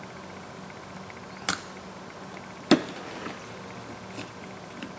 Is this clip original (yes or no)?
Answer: yes